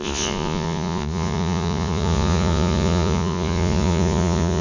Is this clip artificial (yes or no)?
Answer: yes